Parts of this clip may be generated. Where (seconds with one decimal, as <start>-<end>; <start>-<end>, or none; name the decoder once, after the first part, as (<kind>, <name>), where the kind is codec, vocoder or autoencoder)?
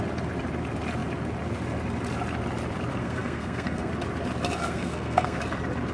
3.0-3.9 (codec, SNAC); 4.6-5.4